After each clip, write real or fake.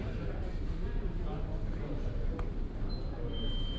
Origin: real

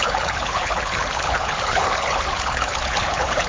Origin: fake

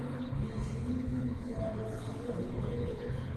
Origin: fake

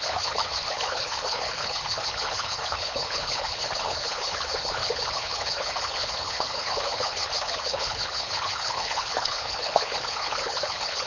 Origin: fake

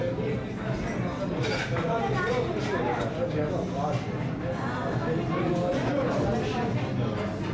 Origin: real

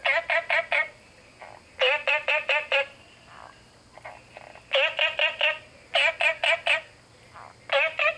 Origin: real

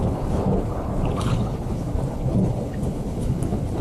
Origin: fake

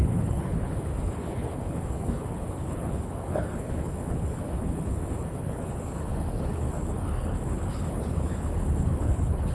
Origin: fake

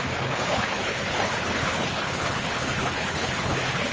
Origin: fake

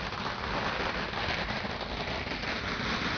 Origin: real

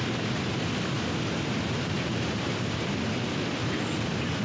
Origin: real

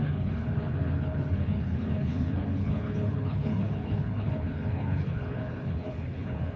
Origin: fake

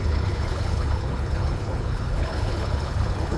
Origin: fake